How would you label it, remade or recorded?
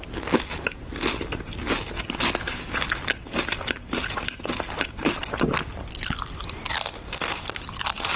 recorded